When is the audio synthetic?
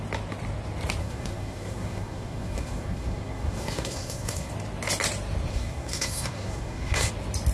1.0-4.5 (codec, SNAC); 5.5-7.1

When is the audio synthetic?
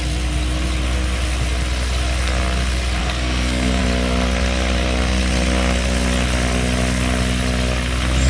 3.0-3.8 (codec, SNAC)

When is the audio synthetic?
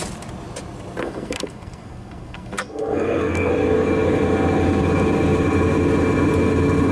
1.0-3.5 (codec, SNAC)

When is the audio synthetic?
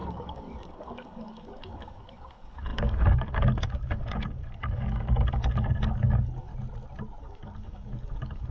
0.0-6.5 (codec, DAC); 7.2-8.5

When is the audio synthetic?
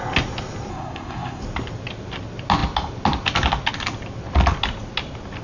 0.7-1.4 (codec, SNAC)